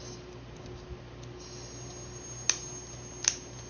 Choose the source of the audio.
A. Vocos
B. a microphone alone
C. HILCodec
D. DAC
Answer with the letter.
B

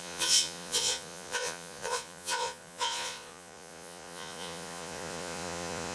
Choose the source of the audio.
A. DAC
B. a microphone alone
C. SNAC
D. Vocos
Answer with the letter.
D